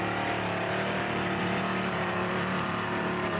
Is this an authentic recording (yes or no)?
no